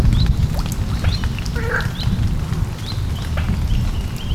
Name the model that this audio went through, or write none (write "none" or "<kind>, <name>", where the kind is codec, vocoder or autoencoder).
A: none